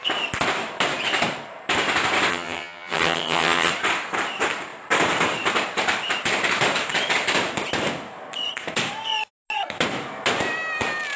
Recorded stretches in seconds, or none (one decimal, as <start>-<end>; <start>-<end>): 0.0-2.3; 3.7-11.2